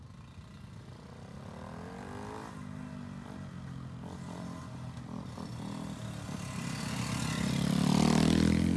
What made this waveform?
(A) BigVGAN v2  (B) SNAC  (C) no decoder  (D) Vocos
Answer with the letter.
C